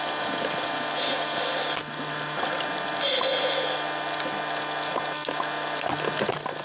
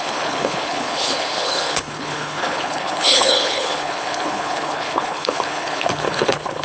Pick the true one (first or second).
first